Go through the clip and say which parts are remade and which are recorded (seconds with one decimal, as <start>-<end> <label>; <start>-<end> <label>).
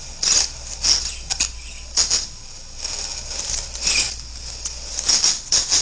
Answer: 0.0-5.8 recorded